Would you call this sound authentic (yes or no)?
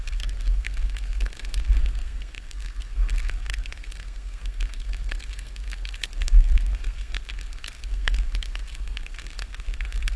no